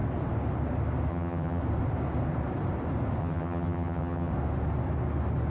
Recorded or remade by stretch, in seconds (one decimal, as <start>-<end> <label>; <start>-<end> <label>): 0.0-1.1 recorded; 1.1-1.6 remade; 1.6-3.2 recorded; 3.2-4.3 remade; 4.3-5.5 recorded